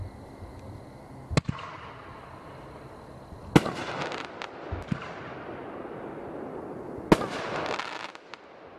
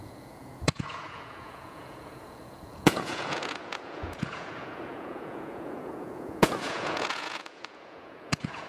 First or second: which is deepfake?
second